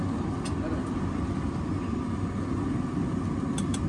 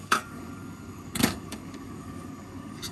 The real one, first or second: first